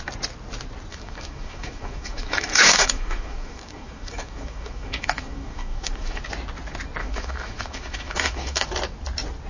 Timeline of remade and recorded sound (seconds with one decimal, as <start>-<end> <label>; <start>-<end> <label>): 0.0-0.9 recorded; 0.9-6.2 remade; 6.2-7.0 recorded; 7.0-8.7 remade; 8.7-9.5 recorded